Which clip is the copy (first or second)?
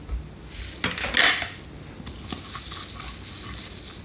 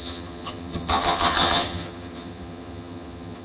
second